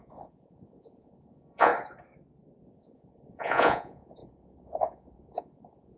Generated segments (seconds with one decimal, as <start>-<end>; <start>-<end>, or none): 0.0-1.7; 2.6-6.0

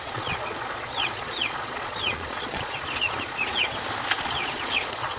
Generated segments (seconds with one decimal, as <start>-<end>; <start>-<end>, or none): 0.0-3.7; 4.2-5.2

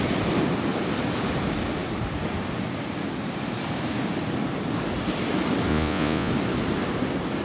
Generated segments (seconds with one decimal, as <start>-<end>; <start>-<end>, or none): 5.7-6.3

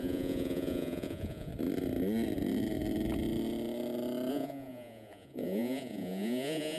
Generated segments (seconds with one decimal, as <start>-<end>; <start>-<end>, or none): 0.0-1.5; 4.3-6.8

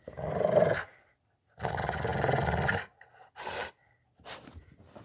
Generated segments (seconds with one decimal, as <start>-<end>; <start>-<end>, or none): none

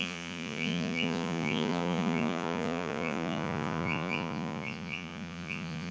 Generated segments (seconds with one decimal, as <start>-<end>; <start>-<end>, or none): 0.0-5.9